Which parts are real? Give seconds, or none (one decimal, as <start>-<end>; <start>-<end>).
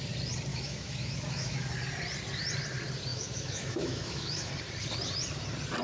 0.0-0.5; 1.7-3.1; 4.5-5.8